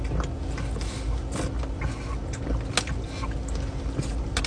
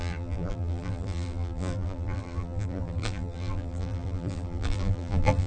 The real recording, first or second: first